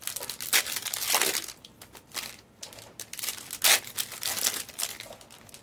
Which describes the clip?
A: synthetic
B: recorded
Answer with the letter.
B